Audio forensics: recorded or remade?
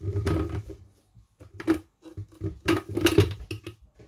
recorded